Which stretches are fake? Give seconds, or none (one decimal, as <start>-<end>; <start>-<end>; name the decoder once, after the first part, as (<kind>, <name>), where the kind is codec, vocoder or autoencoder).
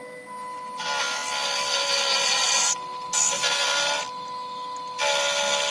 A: none